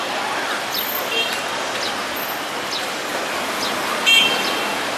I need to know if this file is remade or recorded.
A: recorded